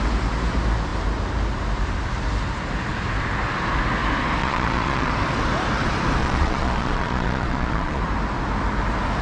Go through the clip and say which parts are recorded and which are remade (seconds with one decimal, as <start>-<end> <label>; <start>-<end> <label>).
0.0-4.4 recorded; 4.4-5.1 remade; 5.1-6.2 recorded; 6.2-8.0 remade; 8.0-9.2 recorded